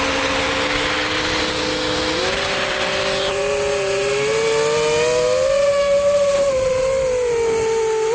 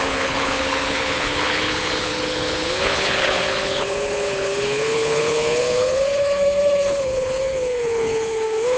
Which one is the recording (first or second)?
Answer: first